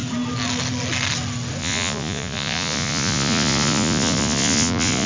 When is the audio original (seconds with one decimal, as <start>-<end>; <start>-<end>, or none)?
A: 0.0-1.6